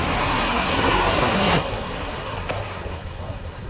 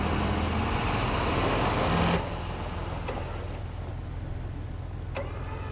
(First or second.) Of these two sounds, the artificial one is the first